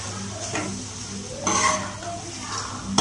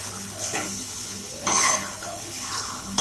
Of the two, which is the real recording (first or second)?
first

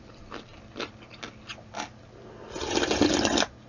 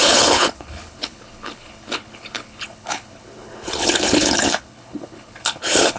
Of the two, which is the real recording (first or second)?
first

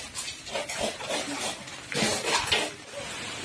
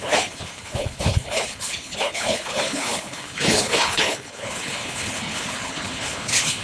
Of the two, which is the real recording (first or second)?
first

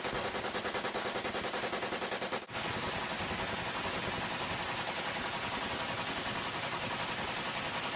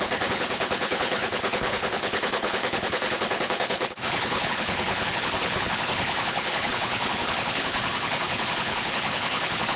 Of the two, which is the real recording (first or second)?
first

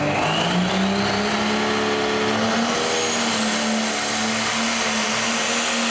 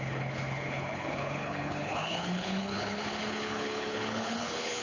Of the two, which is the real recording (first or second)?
first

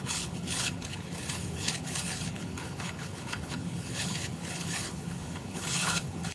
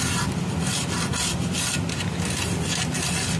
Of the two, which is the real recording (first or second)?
second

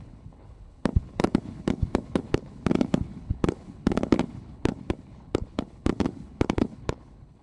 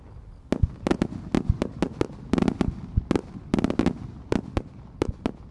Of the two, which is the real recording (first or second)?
second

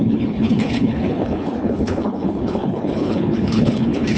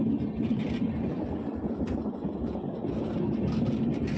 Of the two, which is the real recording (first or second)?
second